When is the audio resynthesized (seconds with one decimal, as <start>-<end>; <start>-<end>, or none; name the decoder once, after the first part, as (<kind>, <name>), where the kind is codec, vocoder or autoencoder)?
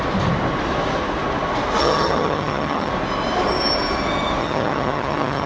1.8-2.9 (vocoder, HiFi-GAN); 4.4-5.5